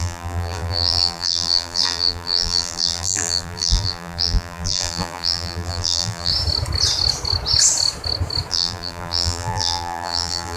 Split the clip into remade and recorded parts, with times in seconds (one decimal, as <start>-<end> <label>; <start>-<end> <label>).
0.0-6.3 remade; 6.3-8.5 recorded; 8.5-10.6 remade